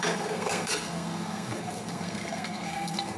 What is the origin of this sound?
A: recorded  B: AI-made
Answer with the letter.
B